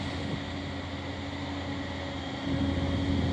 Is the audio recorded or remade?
recorded